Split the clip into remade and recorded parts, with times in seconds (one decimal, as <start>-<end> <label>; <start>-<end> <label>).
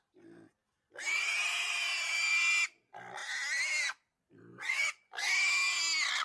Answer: 0.0-4.5 recorded; 4.5-5.1 remade; 5.1-6.2 recorded